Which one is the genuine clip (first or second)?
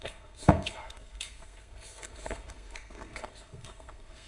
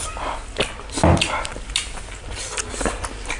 second